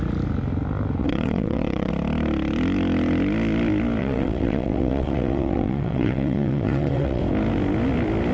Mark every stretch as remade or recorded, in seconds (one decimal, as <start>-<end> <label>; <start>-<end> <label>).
0.0-1.0 recorded; 1.0-1.9 remade; 1.9-4.0 recorded; 4.0-7.2 remade; 7.2-8.3 recorded

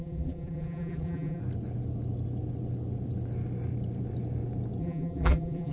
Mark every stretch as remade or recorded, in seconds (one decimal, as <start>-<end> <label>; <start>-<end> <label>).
0.0-1.4 remade; 1.4-4.8 recorded; 4.8-5.7 remade